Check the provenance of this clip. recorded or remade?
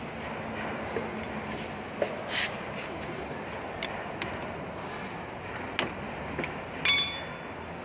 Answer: recorded